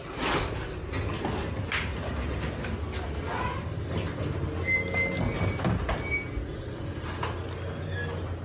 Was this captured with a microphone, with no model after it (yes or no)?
yes